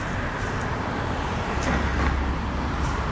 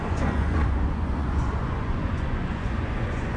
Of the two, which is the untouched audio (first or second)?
first